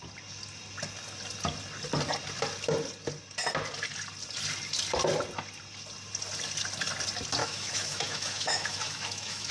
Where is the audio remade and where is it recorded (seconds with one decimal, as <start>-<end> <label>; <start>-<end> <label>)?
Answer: 0.0-7.4 recorded; 7.4-9.5 remade